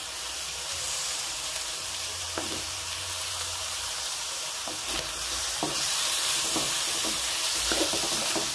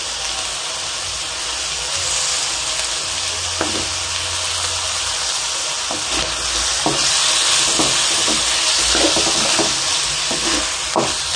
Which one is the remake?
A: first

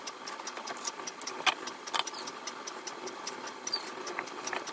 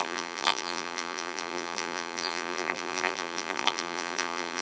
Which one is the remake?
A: second